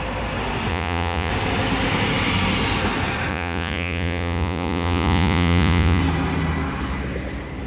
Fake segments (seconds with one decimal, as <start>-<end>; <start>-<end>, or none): 0.7-1.3; 3.3-6.0